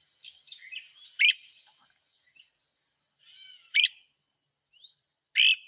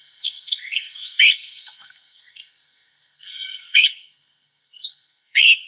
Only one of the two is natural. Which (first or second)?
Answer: first